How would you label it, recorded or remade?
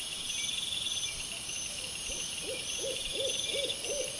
remade